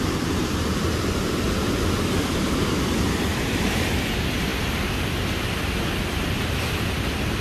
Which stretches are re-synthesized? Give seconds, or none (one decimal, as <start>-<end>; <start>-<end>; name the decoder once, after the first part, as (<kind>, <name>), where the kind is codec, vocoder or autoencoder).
none